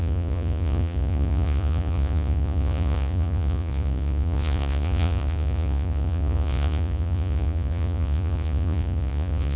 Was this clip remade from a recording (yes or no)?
yes